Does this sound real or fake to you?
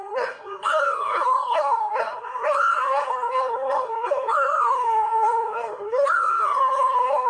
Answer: fake